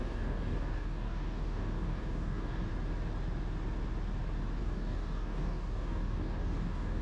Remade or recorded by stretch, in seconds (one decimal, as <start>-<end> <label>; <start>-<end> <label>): 0.0-2.7 remade; 2.7-4.6 recorded; 4.6-7.0 remade